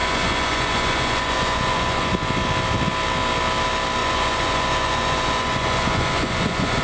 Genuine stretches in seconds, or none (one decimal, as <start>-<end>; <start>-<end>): 2.1-4.0